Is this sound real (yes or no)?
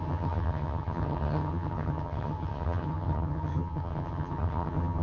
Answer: no